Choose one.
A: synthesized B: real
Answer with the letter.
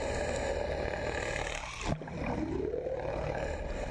B